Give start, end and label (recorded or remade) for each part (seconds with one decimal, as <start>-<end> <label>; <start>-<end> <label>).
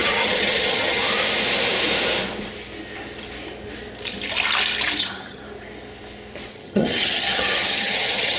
0.0-1.0 remade; 1.0-5.0 recorded; 5.0-5.4 remade; 5.4-6.5 recorded; 6.5-8.4 remade